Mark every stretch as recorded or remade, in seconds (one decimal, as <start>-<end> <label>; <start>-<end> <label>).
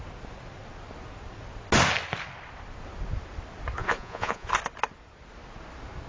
0.0-3.8 recorded; 3.8-4.5 remade; 4.5-6.1 recorded